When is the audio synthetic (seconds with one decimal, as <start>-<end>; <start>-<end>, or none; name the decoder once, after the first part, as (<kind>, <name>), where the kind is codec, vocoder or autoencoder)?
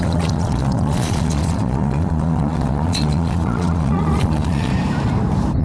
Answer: 0.0-4.7 (vocoder, Vocos)